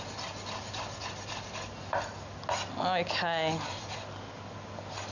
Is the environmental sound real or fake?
real